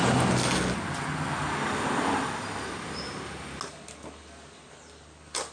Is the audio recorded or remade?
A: recorded